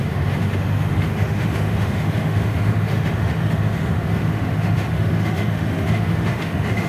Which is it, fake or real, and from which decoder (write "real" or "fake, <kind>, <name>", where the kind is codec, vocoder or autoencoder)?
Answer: fake, autoencoder, DAC-VAE